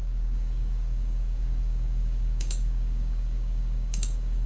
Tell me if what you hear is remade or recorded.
remade